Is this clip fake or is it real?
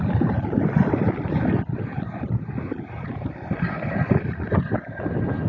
real